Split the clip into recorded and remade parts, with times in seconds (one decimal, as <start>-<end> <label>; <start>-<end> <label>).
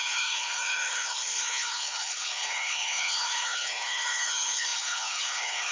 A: 0.0-5.7 remade